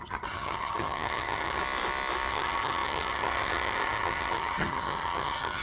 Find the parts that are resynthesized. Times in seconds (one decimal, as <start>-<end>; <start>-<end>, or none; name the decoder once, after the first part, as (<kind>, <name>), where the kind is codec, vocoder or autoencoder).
0.0-1.6 (vocoder, HiFi-GAN); 2.3-5.6